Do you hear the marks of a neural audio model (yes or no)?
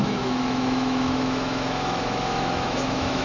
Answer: yes